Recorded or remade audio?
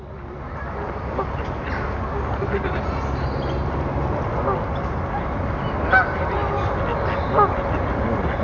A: recorded